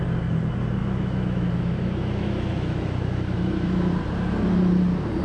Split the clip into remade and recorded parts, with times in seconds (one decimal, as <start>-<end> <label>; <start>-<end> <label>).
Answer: 0.0-0.8 recorded; 0.8-3.9 remade; 3.9-5.2 recorded